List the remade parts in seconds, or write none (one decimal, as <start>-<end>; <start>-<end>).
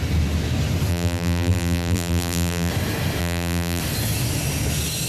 0.9-2.7; 3.2-3.8